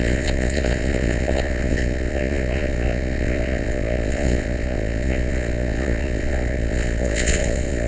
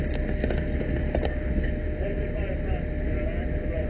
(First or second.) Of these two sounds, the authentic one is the second